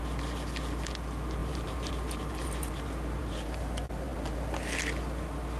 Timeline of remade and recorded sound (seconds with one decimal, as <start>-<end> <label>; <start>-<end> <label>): 0.0-1.4 recorded; 1.4-1.9 remade; 1.9-3.2 recorded; 3.2-3.9 remade; 3.9-5.6 recorded